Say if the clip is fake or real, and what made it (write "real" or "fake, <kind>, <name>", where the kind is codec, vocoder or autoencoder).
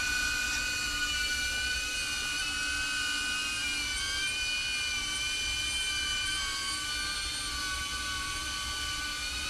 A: real